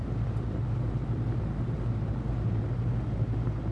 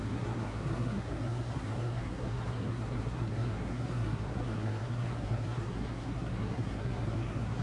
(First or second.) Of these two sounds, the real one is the first